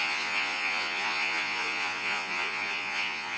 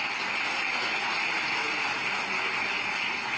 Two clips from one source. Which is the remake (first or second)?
first